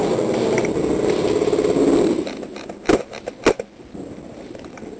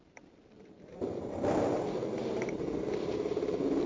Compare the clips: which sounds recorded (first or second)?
first